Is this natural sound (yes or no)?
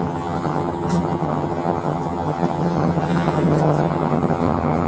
no